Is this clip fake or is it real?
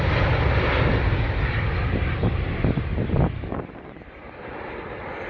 real